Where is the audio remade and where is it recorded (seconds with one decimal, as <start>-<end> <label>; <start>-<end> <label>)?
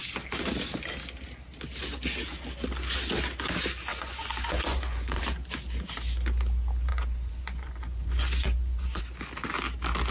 0.0-3.9 recorded; 3.9-5.2 remade; 5.2-6.9 recorded; 6.9-9.0 remade; 9.0-10.1 recorded